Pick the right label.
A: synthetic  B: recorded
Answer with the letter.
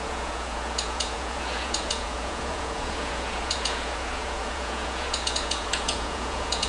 A